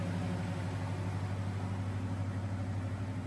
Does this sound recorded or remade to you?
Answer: recorded